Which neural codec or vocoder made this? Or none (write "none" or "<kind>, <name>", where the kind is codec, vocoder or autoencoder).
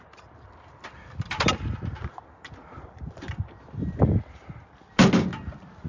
none